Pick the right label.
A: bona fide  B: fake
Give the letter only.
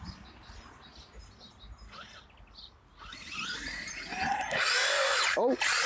A